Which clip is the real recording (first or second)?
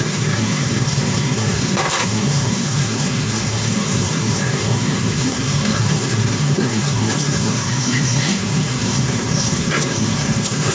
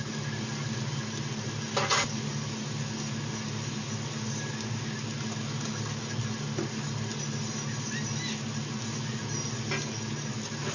second